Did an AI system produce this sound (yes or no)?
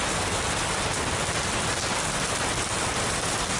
yes